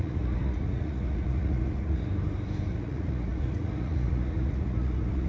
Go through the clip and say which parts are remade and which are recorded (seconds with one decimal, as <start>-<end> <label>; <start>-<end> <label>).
0.0-2.1 remade; 2.1-2.7 recorded; 2.7-5.3 remade